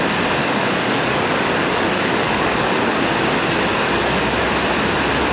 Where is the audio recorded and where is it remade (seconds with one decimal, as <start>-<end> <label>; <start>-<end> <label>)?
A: 0.0-0.4 recorded; 0.4-3.0 remade; 3.0-3.7 recorded; 3.7-4.2 remade; 4.2-5.3 recorded